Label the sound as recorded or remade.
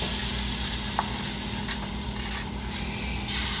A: recorded